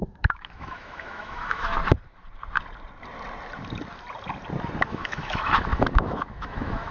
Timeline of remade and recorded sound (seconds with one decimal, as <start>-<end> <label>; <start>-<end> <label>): 0.0-1.8 remade; 1.8-4.9 recorded; 4.9-6.9 remade